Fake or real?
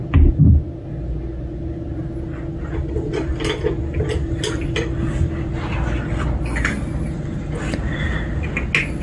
real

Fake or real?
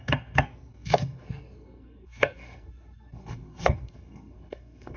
fake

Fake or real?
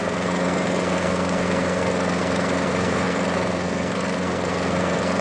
fake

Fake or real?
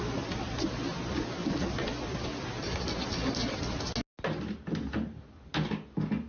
real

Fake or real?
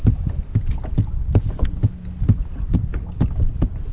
real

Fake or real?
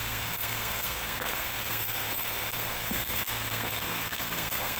fake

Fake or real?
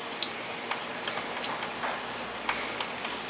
real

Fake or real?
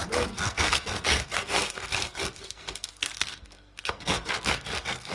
fake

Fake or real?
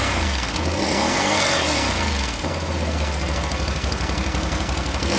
fake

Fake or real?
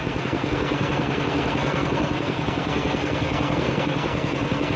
fake